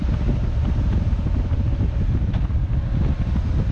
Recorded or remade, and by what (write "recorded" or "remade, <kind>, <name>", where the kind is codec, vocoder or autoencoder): recorded